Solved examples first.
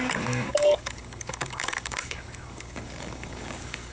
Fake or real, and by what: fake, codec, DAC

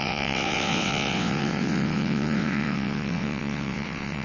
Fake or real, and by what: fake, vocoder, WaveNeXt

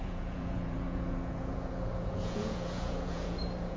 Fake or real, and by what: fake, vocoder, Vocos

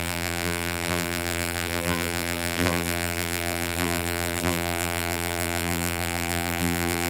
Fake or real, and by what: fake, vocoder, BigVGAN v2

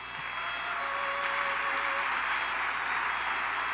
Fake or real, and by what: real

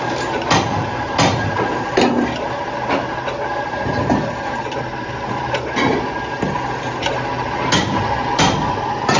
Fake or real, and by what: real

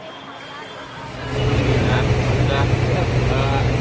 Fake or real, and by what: real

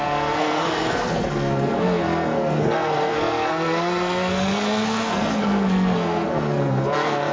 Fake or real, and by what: fake, codec, SNAC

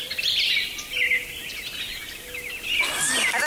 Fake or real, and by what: fake, vocoder, BigVGAN v2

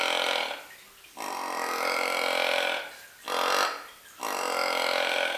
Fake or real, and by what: real